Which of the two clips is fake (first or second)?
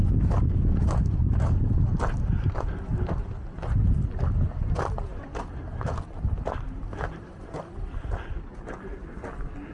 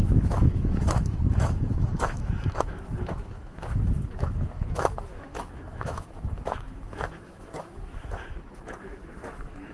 second